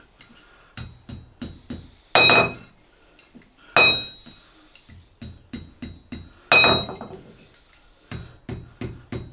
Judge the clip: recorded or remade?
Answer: recorded